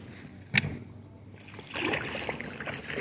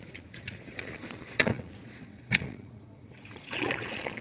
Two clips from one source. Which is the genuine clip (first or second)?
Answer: first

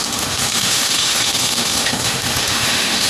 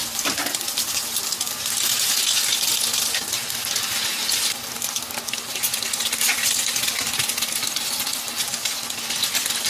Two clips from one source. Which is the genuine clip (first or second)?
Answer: second